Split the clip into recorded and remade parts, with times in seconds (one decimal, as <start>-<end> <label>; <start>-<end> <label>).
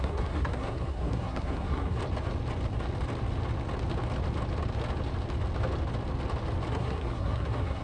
0.0-2.0 remade; 2.0-6.7 recorded; 6.7-7.8 remade